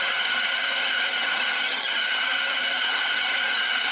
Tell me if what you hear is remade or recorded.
remade